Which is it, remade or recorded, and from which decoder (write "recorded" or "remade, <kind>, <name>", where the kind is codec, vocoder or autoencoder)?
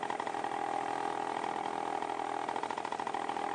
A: recorded